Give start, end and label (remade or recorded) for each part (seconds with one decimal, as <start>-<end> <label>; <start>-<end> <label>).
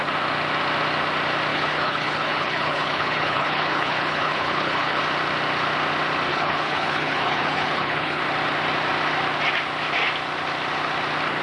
0.0-1.5 recorded; 1.5-5.0 remade; 5.0-6.3 recorded; 6.3-8.2 remade; 8.2-11.4 recorded